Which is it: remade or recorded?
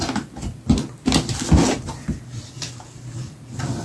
recorded